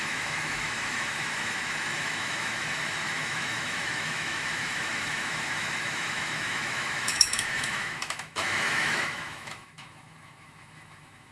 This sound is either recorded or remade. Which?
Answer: remade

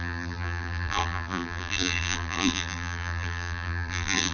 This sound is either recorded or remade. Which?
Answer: remade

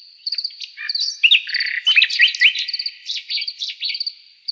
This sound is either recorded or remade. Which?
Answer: recorded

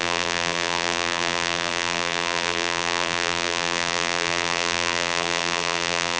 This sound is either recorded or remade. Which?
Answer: remade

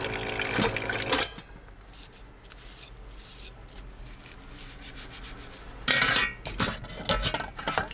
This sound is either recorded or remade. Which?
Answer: recorded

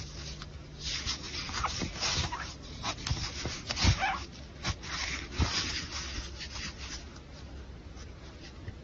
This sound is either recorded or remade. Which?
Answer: recorded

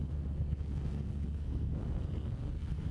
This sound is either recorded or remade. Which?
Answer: remade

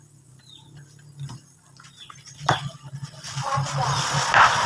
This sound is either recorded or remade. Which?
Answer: remade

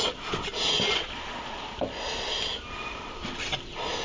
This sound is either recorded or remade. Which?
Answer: recorded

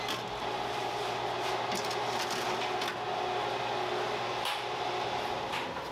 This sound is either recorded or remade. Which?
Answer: recorded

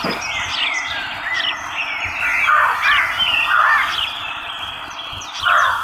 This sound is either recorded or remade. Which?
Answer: recorded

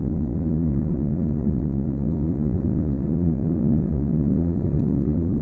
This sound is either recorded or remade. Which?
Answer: remade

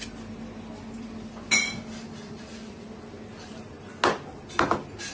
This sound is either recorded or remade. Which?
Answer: recorded